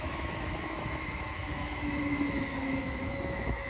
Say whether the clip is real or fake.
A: fake